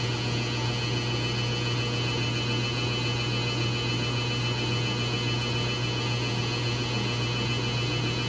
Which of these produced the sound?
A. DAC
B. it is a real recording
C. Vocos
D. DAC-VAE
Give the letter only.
B